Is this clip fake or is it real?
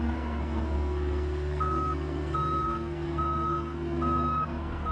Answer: fake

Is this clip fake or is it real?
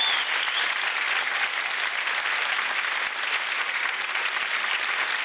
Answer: real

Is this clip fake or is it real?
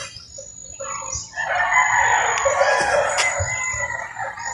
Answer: real